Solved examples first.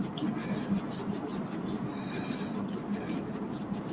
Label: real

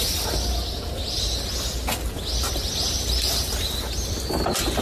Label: real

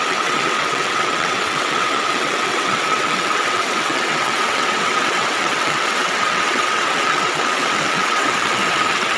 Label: fake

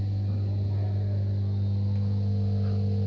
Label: real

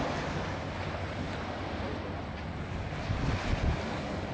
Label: real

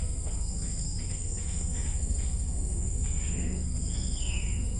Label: fake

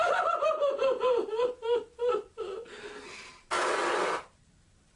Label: real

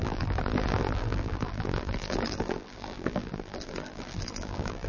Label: fake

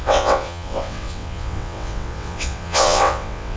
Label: fake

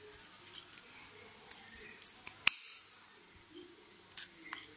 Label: real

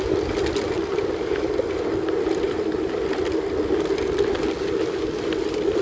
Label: real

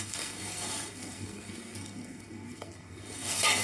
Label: fake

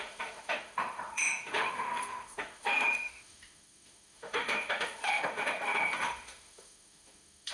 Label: fake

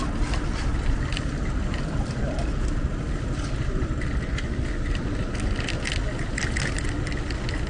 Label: real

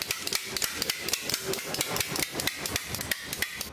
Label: real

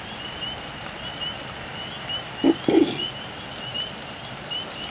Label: real